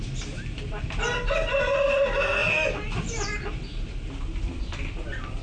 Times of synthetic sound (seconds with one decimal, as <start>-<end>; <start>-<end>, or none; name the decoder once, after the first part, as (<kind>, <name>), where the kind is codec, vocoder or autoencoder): none